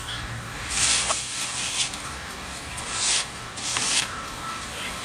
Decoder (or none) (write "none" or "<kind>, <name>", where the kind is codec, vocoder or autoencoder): codec, DAC